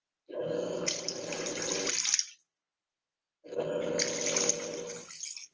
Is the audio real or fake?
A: real